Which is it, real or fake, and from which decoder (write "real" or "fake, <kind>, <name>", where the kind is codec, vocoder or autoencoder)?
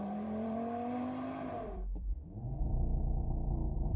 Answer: fake, vocoder, BigVGAN v2